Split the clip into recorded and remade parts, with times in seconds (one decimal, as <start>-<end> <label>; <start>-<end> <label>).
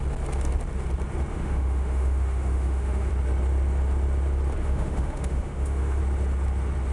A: 0.0-1.3 recorded; 1.3-3.1 remade; 3.1-4.6 recorded; 4.6-6.0 remade; 6.0-6.9 recorded